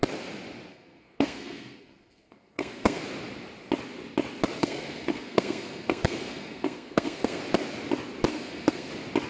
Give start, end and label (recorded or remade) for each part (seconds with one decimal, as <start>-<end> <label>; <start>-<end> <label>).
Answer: 0.0-0.7 recorded; 0.7-3.0 remade; 3.0-4.6 recorded; 4.6-7.4 remade; 7.4-8.3 recorded; 8.3-8.9 remade; 8.9-9.3 recorded